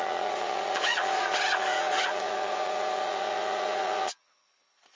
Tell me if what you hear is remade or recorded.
remade